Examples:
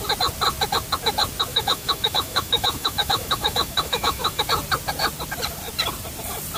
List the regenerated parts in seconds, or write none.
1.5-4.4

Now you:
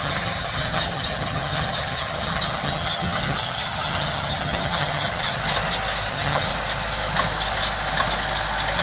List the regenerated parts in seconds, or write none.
0.0-5.4; 6.1-6.5